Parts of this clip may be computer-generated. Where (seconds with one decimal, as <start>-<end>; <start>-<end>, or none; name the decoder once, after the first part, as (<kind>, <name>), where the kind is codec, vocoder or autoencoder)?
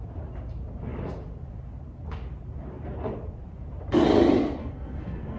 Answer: 4.6-5.4 (codec, SNAC)